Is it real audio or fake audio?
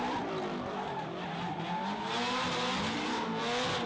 real